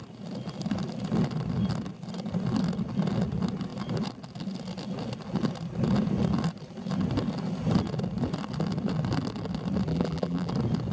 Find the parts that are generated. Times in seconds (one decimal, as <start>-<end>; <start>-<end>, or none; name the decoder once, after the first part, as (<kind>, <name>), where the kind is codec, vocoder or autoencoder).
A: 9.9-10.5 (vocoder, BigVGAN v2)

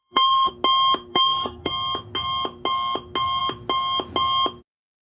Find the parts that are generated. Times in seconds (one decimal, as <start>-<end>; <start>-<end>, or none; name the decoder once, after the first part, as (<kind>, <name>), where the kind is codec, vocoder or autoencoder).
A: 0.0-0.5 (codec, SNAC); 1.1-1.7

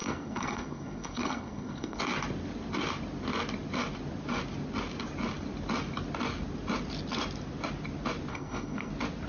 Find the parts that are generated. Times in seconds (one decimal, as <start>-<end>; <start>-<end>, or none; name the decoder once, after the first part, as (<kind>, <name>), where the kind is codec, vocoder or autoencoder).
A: 0.0-2.0 (codec, SNAC); 8.3-8.9

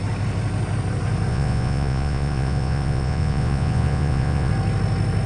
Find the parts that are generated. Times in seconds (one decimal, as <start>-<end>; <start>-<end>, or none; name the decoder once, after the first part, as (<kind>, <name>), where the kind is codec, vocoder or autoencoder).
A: 1.3-4.5 (vocoder, Vocos)